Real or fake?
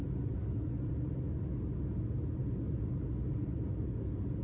real